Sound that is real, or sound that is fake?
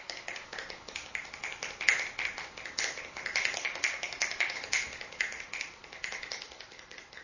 real